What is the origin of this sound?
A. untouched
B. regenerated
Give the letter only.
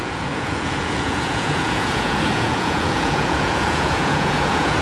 B